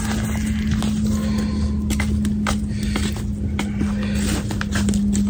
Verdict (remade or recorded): recorded